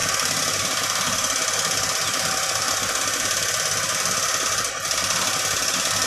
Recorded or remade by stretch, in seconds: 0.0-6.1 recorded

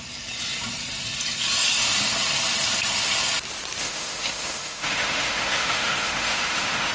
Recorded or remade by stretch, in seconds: 0.0-3.8 recorded; 3.8-6.9 remade

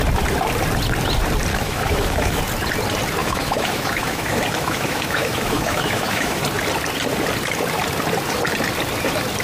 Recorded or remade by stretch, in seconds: 0.0-1.5 recorded; 1.5-2.4 remade; 2.4-3.2 recorded; 3.2-6.4 remade; 6.4-9.4 recorded

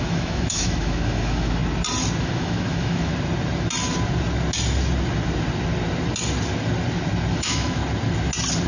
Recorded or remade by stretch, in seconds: 0.0-1.6 remade; 1.6-2.2 recorded; 2.2-3.1 remade; 3.1-7.3 recorded; 7.3-7.8 remade; 7.8-8.7 recorded

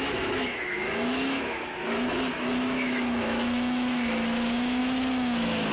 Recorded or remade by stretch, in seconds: 0.0-5.7 remade

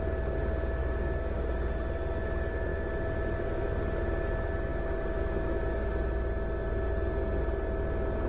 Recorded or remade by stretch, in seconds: 0.0-0.8 recorded; 0.8-1.4 remade; 1.4-4.7 recorded; 4.7-5.9 remade; 5.9-8.3 recorded

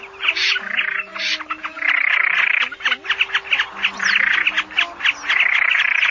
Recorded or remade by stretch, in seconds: 0.0-6.1 recorded

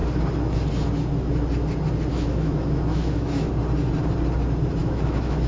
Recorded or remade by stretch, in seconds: 0.0-2.1 recorded; 2.1-3.5 remade; 3.5-4.8 recorded; 4.8-5.5 remade